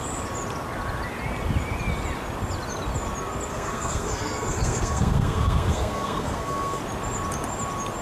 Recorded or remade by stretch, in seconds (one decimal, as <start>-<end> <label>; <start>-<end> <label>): 0.0-3.5 recorded; 3.5-6.8 remade; 6.8-8.0 recorded